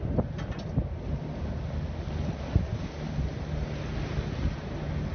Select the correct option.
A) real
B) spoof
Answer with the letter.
A